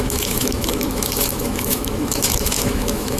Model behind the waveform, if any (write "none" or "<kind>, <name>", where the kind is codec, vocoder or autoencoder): autoencoder, DAC-VAE